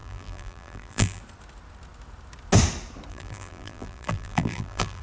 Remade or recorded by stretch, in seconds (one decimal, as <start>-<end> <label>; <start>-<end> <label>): 0.0-1.2 remade; 1.2-3.1 recorded; 3.1-5.0 remade